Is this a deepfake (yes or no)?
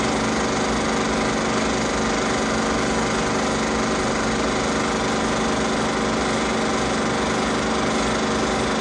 no